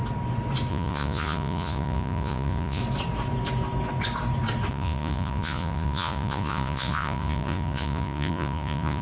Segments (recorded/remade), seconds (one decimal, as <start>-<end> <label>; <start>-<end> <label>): 0.0-0.7 recorded; 0.7-2.8 remade; 2.8-4.7 recorded; 4.7-9.0 remade